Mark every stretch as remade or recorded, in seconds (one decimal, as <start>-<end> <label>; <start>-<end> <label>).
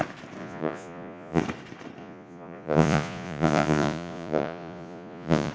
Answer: 0.0-0.4 recorded; 0.4-1.4 remade; 1.4-2.0 recorded; 2.0-5.5 remade